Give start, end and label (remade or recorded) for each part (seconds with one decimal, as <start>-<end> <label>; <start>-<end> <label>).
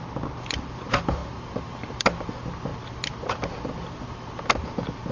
0.0-2.7 remade; 2.7-4.0 recorded; 4.0-5.1 remade